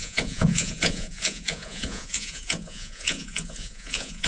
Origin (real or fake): fake